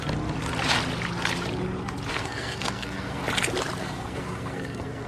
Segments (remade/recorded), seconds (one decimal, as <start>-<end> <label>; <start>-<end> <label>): 0.0-2.1 recorded; 2.1-3.2 remade; 3.2-3.8 recorded; 3.8-5.1 remade